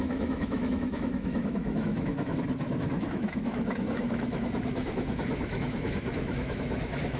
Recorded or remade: remade